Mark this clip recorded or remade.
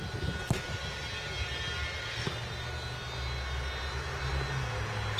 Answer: recorded